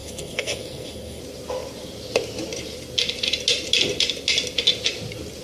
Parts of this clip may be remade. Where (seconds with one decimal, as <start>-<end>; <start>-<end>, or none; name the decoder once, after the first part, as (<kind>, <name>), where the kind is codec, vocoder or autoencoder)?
0.0-1.2 (codec, SNAC)